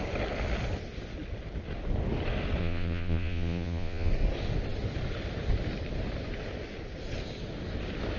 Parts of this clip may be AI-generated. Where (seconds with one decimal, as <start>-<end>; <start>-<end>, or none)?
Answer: 2.6-4.1